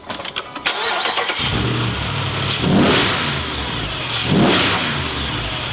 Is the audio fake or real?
real